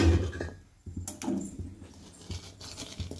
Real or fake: real